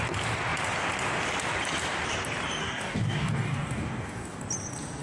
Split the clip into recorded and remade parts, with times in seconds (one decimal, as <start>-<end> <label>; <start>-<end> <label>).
0.0-2.6 recorded; 2.6-4.4 remade; 4.4-5.0 recorded